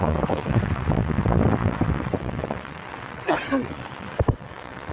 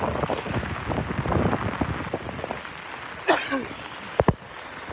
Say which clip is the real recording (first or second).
second